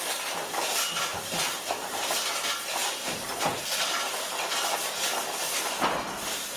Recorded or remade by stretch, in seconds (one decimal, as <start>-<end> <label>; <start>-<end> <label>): 0.0-1.1 recorded; 1.1-2.1 remade; 2.1-6.6 recorded